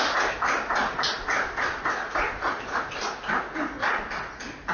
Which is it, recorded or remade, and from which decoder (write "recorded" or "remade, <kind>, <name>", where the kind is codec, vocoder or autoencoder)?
recorded